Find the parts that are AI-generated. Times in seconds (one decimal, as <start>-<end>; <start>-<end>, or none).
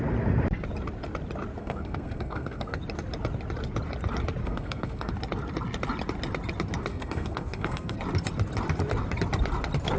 1.6-2.8; 4.4-5.1; 6.9-8.0